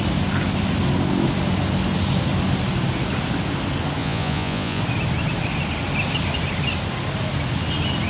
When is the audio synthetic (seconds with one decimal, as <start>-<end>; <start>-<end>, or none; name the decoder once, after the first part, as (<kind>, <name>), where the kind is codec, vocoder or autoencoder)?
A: 4.0-4.8 (vocoder, Vocos)